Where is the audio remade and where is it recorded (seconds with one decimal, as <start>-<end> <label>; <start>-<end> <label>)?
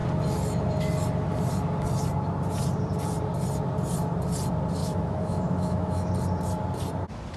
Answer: 0.0-4.8 recorded; 4.8-6.1 remade; 6.1-7.4 recorded